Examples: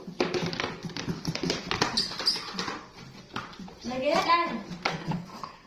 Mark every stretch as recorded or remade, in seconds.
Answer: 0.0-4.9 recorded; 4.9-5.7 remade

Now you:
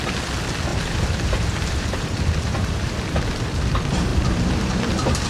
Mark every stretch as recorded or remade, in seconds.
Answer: 0.0-0.7 recorded; 0.7-3.3 remade; 3.3-4.1 recorded; 4.1-5.3 remade

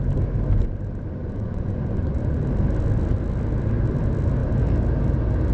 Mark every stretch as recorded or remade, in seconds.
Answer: 0.0-1.2 recorded; 1.2-2.4 remade; 2.4-5.5 recorded

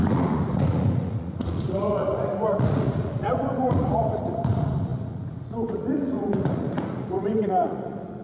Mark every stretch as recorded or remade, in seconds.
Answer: 0.0-8.2 remade

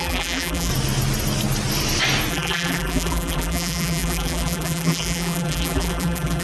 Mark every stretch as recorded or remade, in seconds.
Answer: 0.0-0.7 remade; 0.7-2.3 recorded; 2.3-6.4 remade

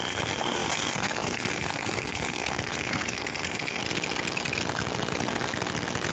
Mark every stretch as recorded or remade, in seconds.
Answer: 0.0-3.8 remade; 3.8-6.1 recorded